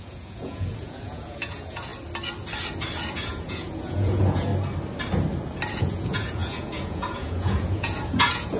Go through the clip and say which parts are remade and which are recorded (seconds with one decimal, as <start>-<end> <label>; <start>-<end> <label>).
0.0-1.9 remade; 1.9-3.1 recorded; 3.1-4.5 remade; 4.5-5.8 recorded; 5.8-8.6 remade